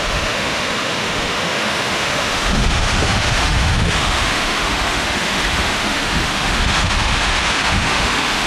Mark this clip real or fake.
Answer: fake